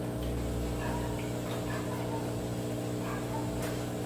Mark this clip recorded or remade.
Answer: recorded